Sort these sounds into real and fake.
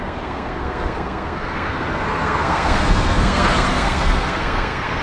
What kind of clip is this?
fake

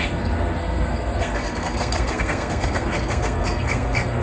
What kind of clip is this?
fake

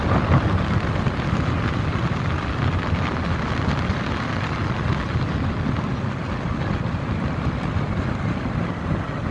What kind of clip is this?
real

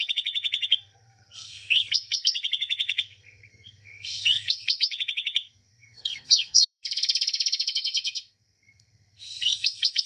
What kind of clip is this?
fake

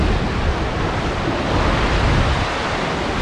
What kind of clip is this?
real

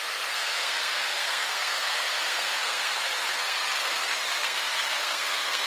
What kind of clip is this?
fake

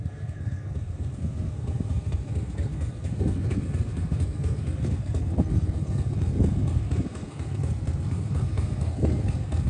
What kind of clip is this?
fake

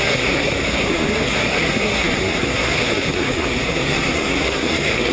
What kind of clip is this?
fake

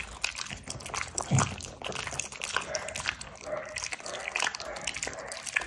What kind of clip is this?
real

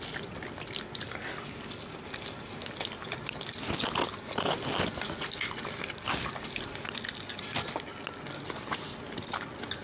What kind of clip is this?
real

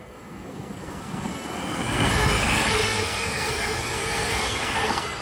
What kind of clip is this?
fake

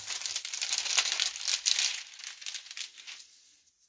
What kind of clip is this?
real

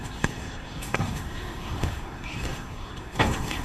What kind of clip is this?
fake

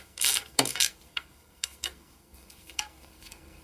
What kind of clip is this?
fake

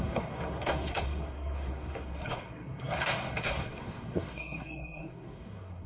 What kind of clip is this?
fake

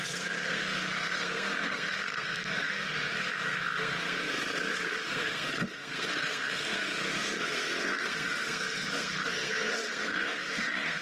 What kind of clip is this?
fake